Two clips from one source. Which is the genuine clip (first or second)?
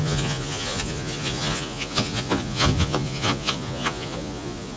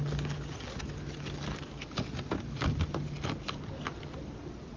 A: second